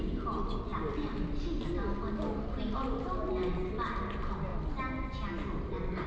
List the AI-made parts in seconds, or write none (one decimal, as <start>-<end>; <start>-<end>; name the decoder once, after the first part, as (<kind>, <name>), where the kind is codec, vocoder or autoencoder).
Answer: none